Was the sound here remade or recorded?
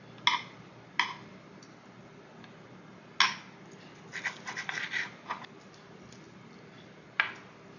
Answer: recorded